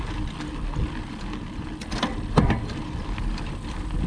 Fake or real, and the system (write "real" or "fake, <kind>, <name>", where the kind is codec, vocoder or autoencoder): real